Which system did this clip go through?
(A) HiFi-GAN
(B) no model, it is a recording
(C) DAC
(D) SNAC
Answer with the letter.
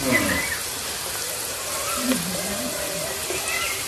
B